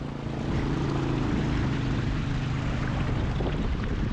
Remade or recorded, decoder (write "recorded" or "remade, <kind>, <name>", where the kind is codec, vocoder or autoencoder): recorded